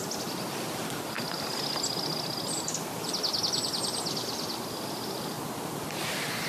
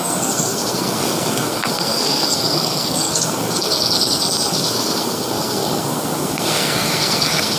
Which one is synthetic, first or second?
second